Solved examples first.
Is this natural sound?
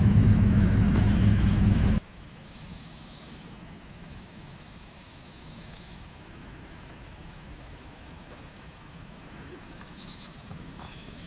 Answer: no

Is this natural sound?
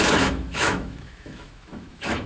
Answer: no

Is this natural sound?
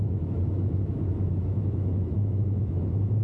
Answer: no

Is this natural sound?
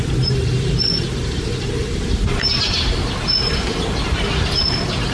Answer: yes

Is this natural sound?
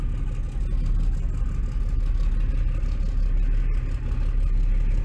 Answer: yes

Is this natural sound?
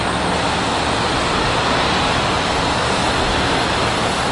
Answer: yes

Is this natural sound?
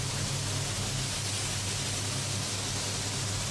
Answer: yes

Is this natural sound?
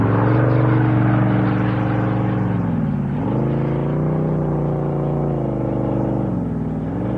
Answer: yes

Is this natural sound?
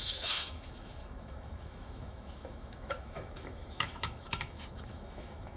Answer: no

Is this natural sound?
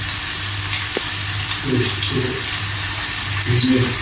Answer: yes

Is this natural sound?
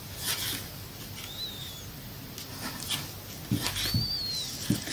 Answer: yes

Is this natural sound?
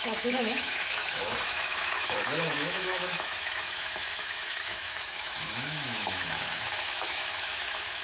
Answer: no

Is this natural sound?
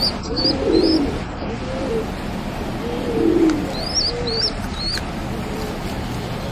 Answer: yes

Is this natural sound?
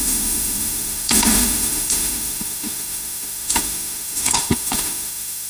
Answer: no